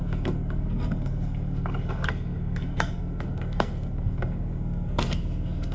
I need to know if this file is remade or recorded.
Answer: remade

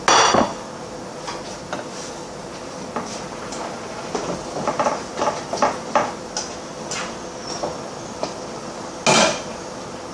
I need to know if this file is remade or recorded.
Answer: recorded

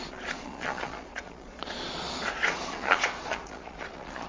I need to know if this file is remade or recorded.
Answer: remade